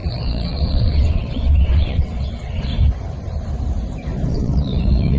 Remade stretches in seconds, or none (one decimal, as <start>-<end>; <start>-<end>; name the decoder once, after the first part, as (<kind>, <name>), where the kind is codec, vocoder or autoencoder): 0.0-2.7 (vocoder, WaveNeXt); 4.3-5.2